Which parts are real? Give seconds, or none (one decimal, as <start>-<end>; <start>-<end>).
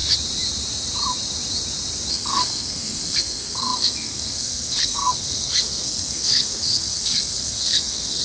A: 0.0-2.1